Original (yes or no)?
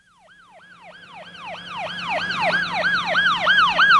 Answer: yes